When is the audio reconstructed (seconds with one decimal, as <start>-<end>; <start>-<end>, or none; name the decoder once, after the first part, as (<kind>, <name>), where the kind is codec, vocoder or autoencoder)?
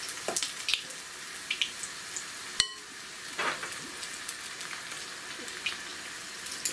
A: none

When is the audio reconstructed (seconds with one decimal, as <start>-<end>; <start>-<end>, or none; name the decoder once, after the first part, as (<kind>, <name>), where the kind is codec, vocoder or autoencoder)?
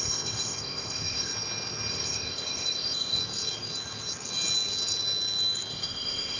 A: 0.0-1.3 (codec, ZipCodec); 1.9-3.2; 5.7-6.4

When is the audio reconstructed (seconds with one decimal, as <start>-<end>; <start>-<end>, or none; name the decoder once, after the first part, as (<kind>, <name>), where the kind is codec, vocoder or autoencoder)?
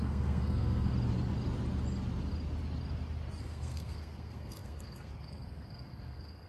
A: 0.0-0.9 (codec, SNAC); 3.4-6.5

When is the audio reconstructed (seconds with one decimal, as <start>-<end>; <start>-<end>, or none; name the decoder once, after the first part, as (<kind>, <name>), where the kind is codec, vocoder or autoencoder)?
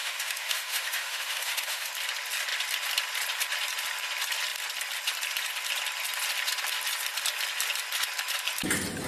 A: 0.0-1.9 (autoencoder, DAC-VAE)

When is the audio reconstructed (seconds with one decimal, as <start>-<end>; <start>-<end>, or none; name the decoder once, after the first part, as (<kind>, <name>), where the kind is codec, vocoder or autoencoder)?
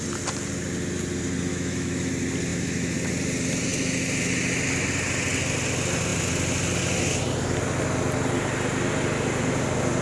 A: 1.5-2.1 (autoencoder, DAC-VAE); 2.5-3.1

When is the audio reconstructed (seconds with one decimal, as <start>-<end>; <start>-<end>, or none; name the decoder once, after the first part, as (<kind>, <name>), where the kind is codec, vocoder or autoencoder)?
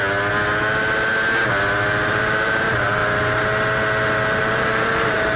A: 2.1-3.0 (vocoder, BigVGAN v2); 4.4-5.4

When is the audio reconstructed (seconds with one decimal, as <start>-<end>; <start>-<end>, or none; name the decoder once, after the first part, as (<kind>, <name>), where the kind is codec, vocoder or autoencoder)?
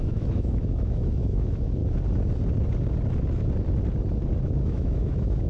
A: 0.0-1.8 (autoencoder, DAC-VAE); 4.4-5.5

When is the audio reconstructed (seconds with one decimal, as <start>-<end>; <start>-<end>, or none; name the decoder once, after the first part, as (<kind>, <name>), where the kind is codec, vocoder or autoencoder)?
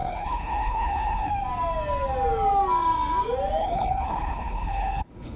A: 0.0-1.3 (codec, HILCodec); 3.6-5.4